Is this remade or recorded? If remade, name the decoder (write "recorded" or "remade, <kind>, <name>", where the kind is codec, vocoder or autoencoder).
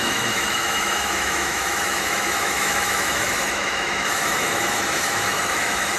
remade, autoencoder, DAC-VAE